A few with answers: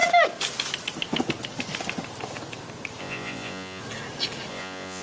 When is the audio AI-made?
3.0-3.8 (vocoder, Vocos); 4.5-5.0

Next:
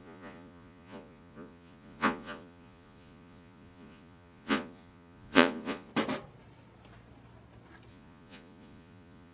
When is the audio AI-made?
0.0-5.9 (vocoder, Vocos); 7.9-9.3

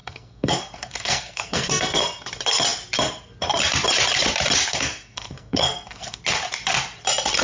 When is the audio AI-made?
0.0-2.0 (codec, SNAC); 4.7-6.2

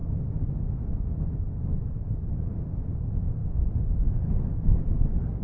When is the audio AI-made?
none

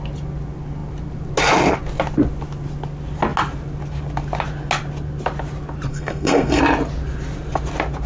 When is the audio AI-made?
5.9-6.6 (codec, SNAC)

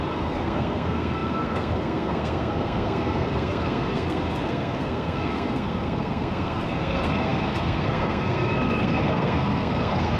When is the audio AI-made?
0.0-10.2 (codec, SNAC)